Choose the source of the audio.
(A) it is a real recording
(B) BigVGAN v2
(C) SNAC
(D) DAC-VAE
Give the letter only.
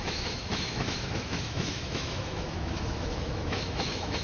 D